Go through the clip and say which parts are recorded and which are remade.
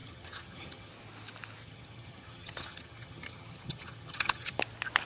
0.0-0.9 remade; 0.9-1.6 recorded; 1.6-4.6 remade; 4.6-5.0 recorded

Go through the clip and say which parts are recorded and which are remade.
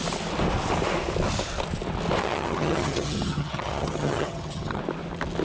0.0-2.2 recorded; 2.2-4.8 remade; 4.8-5.4 recorded